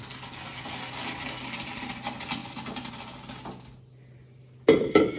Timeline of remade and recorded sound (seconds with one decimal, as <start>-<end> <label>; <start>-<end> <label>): 0.0-5.2 recorded